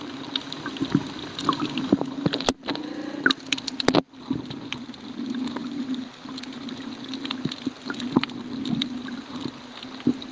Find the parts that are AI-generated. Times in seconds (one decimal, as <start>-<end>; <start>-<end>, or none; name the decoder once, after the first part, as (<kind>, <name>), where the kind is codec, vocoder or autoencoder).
1.4-2.5 (vocoder, BigVGAN v2); 5.6-6.3

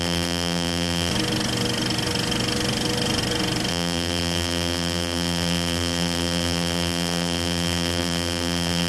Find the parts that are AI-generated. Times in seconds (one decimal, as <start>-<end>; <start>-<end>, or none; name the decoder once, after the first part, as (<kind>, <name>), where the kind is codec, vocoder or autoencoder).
0.0-1.1 (vocoder, BigVGAN v2); 3.7-8.9